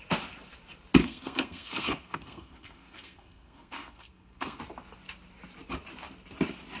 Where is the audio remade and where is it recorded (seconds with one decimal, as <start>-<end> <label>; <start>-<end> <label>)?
0.0-1.0 recorded; 1.0-4.6 remade; 4.6-6.8 recorded